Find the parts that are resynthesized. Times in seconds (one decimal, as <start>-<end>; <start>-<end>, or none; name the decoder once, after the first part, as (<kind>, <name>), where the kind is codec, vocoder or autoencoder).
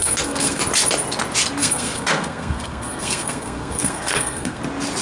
0.0-0.6 (codec, SNAC); 1.6-4.6